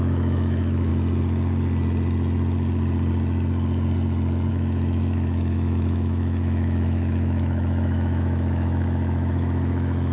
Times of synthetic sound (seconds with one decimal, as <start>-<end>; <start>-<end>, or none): 0.0-0.9; 4.5-10.1